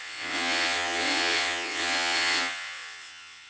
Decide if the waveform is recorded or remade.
remade